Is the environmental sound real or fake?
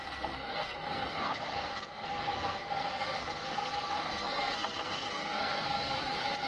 fake